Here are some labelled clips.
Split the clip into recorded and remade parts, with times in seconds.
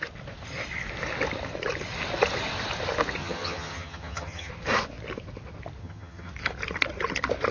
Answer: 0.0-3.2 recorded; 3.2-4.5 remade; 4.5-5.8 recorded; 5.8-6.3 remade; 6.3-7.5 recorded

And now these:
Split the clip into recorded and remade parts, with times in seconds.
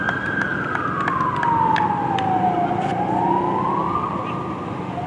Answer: 0.0-5.1 recorded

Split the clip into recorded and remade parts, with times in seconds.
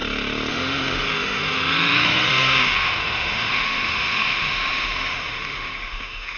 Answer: 0.0-0.5 recorded; 0.5-6.4 remade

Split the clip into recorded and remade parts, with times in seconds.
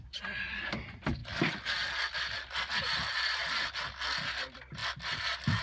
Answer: 0.0-5.6 recorded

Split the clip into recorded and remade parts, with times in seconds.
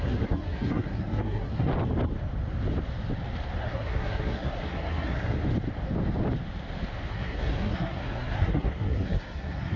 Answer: 0.0-1.7 remade; 1.7-3.6 recorded; 3.6-5.4 remade; 5.4-7.1 recorded; 7.1-9.8 remade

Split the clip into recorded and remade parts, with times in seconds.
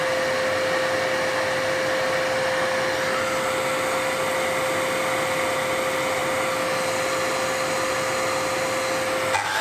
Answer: 0.0-9.6 recorded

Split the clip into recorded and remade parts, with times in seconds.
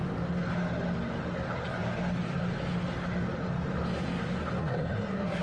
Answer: 0.0-4.6 recorded; 4.6-5.4 remade